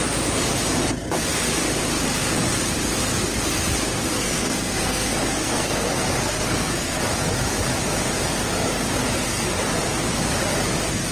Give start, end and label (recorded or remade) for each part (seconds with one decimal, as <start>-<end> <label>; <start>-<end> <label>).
0.0-4.1 recorded; 4.1-7.0 remade; 7.0-11.1 recorded